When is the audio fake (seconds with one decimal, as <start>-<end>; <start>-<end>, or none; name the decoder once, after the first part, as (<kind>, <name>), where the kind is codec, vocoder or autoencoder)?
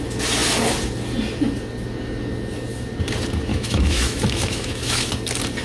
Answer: 3.5-5.1 (autoencoder, DAC-VAE)